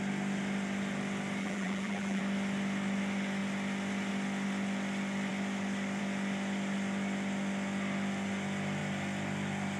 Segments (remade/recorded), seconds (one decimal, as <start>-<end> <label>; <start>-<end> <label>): 0.0-1.4 recorded; 1.4-2.2 remade; 2.2-9.8 recorded